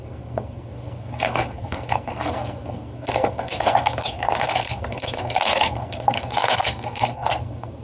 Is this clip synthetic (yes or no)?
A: yes